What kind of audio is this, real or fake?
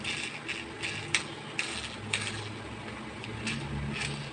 real